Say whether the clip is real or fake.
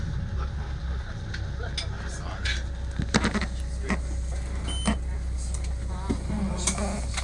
real